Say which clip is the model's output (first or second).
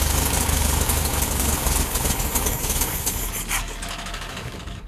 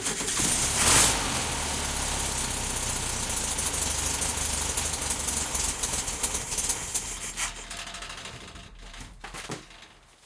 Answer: first